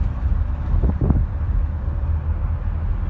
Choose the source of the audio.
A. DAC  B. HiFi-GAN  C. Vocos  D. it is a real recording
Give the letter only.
D